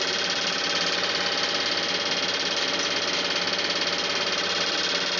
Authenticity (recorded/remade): recorded